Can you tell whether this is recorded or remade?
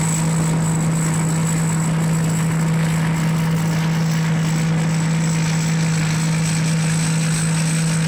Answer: recorded